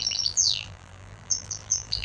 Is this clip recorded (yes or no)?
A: no